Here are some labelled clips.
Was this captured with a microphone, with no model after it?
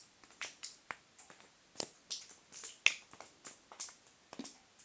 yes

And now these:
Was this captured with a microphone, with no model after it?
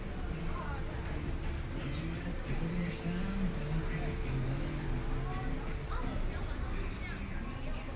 yes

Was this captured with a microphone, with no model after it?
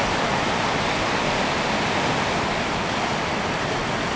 no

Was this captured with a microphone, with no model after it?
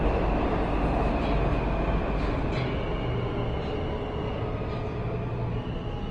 yes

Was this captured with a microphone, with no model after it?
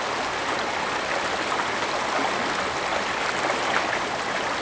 yes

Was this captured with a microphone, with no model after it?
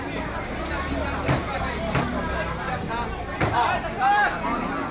yes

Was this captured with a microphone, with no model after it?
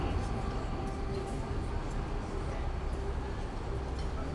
yes